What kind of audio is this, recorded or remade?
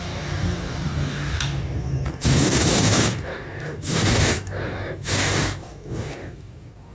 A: remade